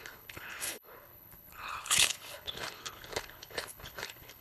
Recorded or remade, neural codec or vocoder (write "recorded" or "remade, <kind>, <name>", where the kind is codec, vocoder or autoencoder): remade, codec, HILCodec